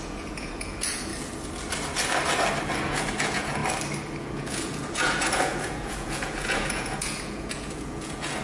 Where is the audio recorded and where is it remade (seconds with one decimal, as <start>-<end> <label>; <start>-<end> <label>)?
0.0-1.1 remade; 1.1-2.9 recorded; 2.9-3.6 remade; 3.6-4.2 recorded; 4.2-8.4 remade